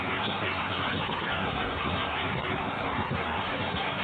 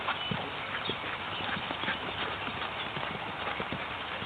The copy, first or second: first